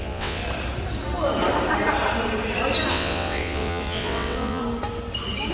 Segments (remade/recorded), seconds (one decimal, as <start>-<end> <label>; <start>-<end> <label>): 0.0-0.4 remade; 0.4-2.9 recorded; 2.9-4.6 remade; 4.6-5.5 recorded